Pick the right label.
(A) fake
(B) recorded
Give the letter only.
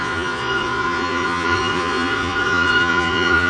A